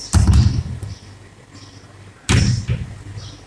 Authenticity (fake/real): real